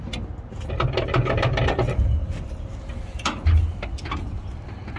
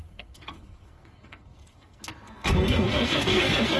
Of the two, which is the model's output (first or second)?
second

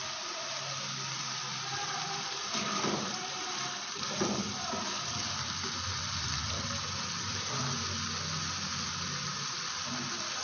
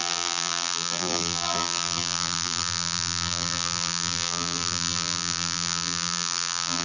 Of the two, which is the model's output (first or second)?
second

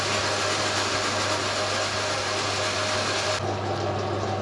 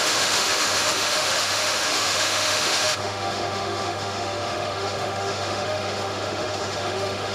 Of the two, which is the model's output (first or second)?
second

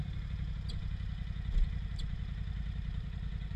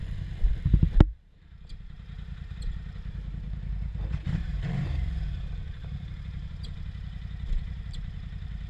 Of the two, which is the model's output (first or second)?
second